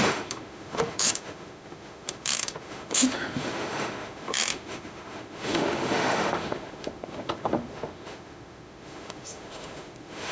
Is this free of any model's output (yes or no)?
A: no